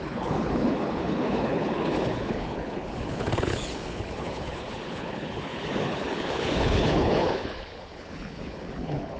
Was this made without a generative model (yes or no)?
no